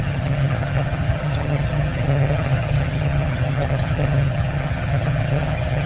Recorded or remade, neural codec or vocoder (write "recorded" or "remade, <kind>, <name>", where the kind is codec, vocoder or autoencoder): remade, vocoder, HiFi-GAN